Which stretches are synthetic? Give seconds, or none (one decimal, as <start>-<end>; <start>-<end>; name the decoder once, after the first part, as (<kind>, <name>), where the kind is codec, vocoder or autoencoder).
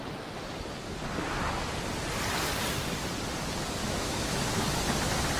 3.8-4.8 (autoencoder, DAC-VAE)